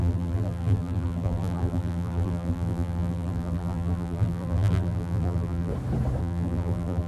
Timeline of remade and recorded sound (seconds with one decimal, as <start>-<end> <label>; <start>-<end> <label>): 0.0-5.7 remade; 5.7-6.2 recorded; 6.2-7.1 remade